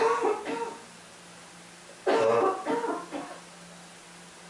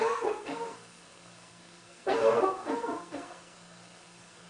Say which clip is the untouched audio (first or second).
first